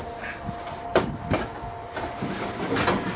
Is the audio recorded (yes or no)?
yes